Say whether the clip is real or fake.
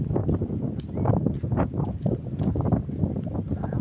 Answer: real